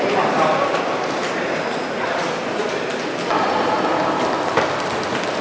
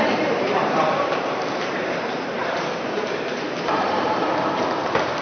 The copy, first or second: second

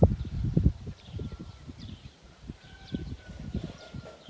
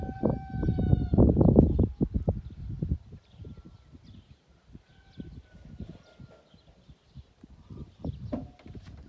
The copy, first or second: first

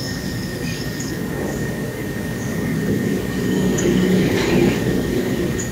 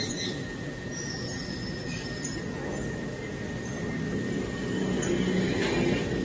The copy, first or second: first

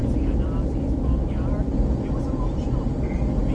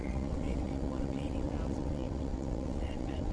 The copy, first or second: second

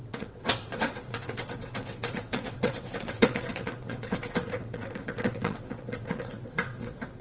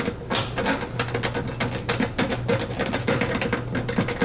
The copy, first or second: first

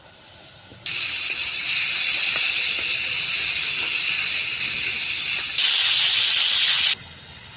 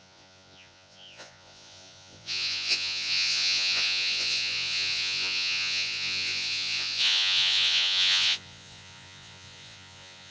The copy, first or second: second